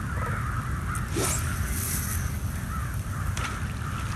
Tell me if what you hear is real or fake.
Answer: real